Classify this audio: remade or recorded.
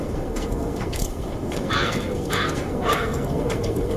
remade